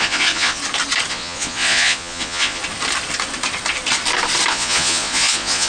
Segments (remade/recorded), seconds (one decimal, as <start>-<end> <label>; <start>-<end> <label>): 0.0-0.6 remade; 0.6-1.1 recorded; 1.1-2.6 remade; 2.6-4.5 recorded; 4.5-5.7 remade